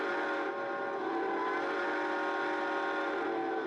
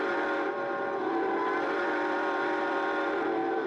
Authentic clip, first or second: first